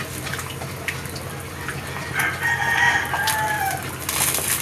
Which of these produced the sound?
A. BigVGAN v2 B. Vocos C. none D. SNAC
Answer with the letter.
C